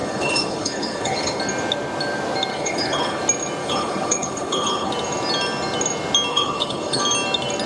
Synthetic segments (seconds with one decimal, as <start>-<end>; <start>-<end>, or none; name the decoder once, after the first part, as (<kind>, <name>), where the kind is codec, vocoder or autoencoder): 0.0-1.4 (codec, HILCodec); 2.5-3.2; 3.6-4.9; 6.3-7.0